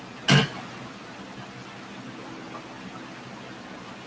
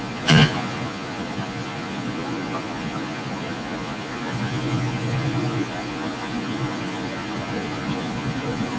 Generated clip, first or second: second